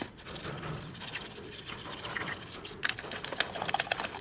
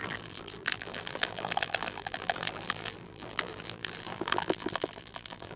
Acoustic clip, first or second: first